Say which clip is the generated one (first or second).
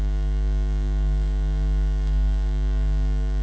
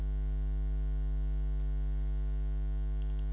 first